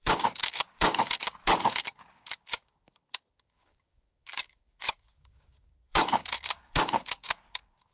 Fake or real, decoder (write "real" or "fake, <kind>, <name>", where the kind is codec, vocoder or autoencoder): fake, codec, DAC